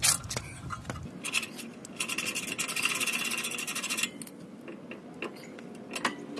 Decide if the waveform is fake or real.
real